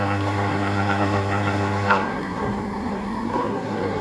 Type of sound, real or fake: fake